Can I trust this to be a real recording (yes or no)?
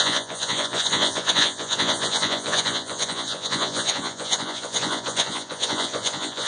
no